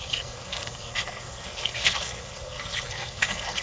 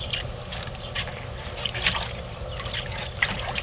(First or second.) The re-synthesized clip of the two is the first